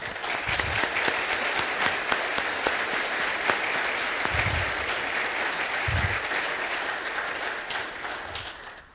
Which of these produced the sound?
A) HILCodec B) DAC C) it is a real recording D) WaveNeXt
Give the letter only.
C